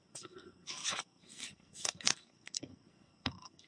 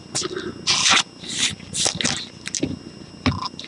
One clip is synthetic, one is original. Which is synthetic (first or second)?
first